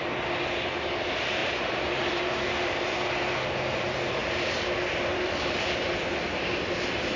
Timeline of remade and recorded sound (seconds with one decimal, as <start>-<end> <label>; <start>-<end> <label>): 0.0-1.4 recorded; 1.4-2.2 remade; 2.2-4.2 recorded; 4.2-5.8 remade; 5.8-7.2 recorded